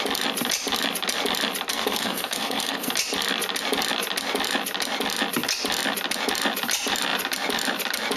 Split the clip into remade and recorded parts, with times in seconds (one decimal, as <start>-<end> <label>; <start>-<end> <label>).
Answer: 0.0-1.7 recorded; 1.7-2.9 remade; 2.9-8.2 recorded